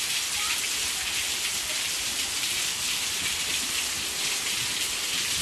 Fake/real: fake